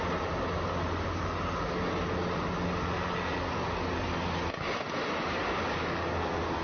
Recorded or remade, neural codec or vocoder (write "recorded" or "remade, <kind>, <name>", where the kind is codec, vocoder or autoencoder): recorded